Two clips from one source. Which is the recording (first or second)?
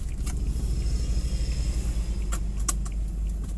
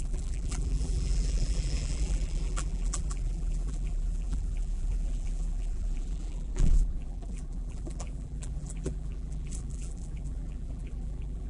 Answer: first